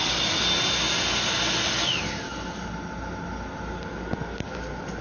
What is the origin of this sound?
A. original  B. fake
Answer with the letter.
A